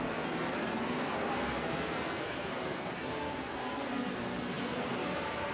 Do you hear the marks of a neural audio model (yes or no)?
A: yes